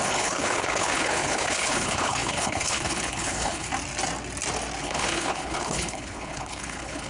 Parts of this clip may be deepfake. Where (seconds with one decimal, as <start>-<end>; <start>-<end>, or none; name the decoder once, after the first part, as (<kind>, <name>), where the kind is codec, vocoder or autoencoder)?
0.0-3.7 (codec, HILCodec); 4.8-7.1